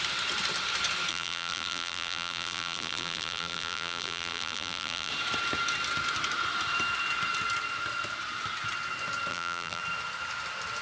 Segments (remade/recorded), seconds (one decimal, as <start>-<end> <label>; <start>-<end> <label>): 0.0-1.1 recorded; 1.1-5.1 remade; 5.1-9.3 recorded; 9.3-9.8 remade; 9.8-10.8 recorded